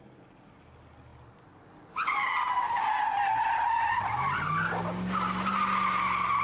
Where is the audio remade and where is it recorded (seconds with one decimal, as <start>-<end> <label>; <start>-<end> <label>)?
0.0-6.4 recorded

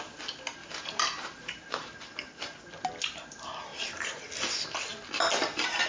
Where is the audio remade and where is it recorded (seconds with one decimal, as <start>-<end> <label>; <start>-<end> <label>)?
0.0-0.6 recorded; 0.6-2.6 remade; 2.6-3.7 recorded; 3.7-4.2 remade; 4.2-5.9 recorded